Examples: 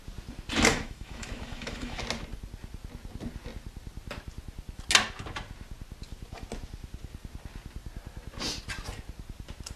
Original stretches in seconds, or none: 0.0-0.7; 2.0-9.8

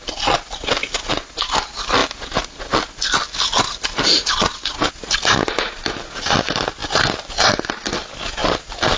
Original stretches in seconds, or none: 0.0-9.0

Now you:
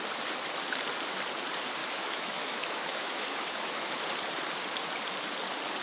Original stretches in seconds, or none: 0.0-1.8; 3.9-5.8

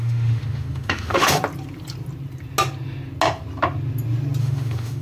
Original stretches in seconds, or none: 1.4-4.4

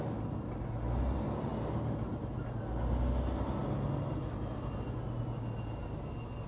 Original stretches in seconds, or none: 0.0-6.5

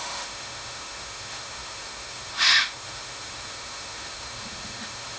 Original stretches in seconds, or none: none